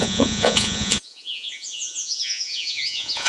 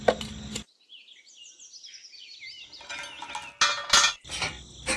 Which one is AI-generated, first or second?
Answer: first